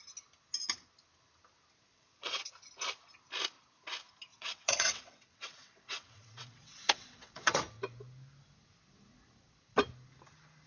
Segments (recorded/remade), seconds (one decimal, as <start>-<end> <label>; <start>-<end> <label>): 0.0-1.9 recorded; 1.9-2.5 remade; 2.5-4.3 recorded; 4.3-7.6 remade; 7.6-10.7 recorded